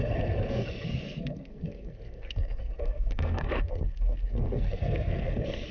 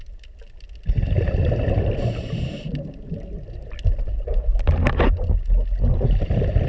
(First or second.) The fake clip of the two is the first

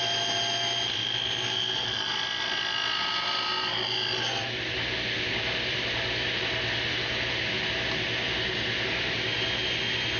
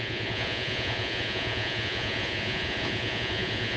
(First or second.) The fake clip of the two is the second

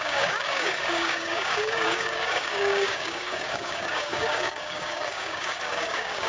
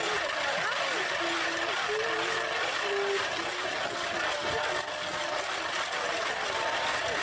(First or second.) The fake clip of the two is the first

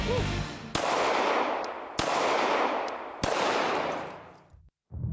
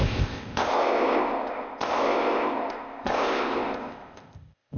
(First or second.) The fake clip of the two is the second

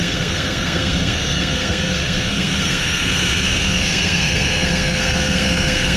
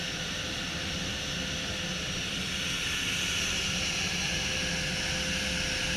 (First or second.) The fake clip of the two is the first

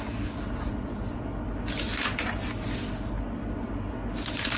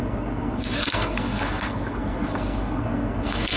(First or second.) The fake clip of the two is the second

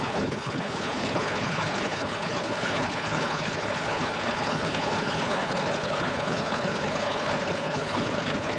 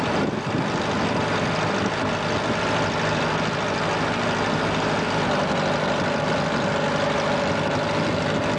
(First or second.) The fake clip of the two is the first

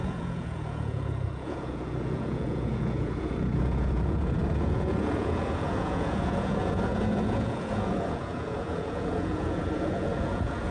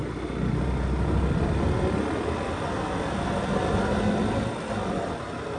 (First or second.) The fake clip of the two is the first